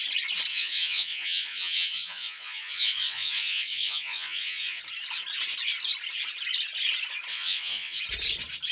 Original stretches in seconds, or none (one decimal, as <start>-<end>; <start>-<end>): 0.0-0.5; 4.8-7.3; 8.0-8.7